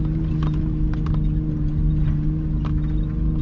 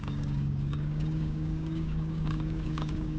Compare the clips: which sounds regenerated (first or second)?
second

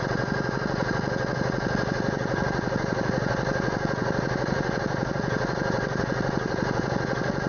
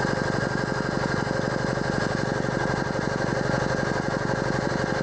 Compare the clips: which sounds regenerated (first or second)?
first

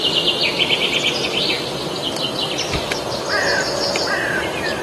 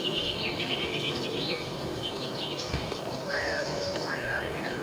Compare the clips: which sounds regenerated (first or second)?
second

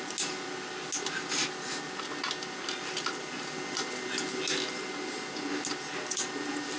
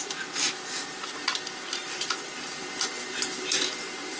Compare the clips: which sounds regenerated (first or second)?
second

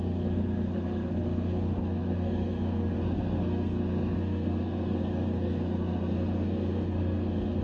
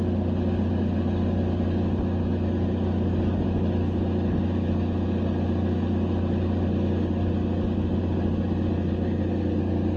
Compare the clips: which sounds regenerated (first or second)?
first